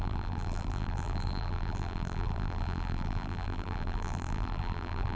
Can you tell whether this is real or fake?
fake